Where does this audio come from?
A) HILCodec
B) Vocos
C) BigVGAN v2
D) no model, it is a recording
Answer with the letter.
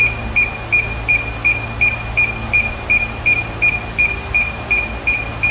D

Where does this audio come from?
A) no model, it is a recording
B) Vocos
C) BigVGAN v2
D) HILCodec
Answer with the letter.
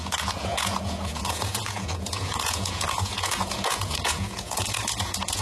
B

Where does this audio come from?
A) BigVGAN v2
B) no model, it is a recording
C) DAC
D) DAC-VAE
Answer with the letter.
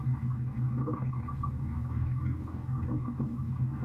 C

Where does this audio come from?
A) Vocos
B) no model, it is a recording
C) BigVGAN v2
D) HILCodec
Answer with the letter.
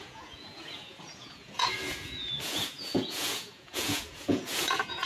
A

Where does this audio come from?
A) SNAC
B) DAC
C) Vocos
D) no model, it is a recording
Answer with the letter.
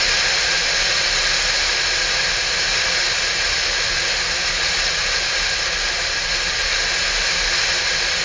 D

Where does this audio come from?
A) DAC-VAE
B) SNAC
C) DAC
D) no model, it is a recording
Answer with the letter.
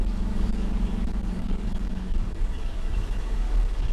C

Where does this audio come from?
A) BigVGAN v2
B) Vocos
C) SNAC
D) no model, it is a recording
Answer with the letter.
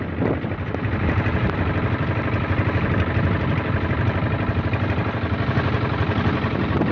D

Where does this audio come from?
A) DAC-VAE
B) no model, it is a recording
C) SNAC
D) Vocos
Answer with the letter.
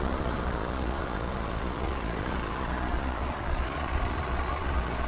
D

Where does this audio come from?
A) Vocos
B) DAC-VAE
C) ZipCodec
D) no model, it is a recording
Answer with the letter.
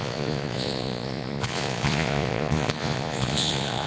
A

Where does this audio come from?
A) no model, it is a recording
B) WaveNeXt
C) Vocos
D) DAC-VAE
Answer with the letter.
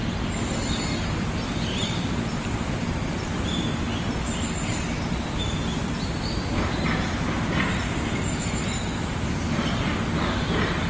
A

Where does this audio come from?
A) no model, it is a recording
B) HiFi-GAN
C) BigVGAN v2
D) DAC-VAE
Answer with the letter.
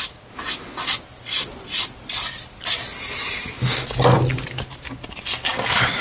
A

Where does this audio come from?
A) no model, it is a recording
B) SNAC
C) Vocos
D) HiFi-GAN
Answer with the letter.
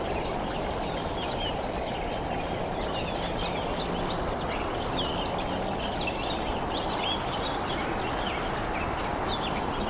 A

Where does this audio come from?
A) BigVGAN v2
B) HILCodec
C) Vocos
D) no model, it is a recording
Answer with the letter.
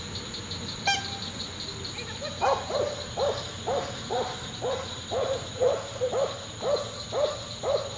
D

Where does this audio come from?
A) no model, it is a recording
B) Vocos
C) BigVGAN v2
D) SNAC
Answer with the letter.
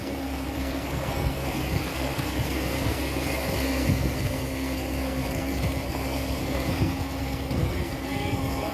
D